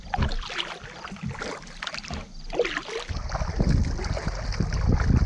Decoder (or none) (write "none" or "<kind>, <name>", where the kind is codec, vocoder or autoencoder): none